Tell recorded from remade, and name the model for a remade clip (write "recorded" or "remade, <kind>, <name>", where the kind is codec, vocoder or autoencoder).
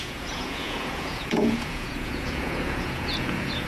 remade, vocoder, Vocos